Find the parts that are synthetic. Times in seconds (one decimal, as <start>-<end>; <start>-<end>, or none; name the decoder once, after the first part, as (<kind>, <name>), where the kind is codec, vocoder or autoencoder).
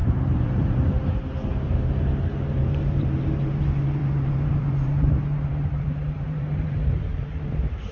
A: 0.0-7.9 (vocoder, BigVGAN v2)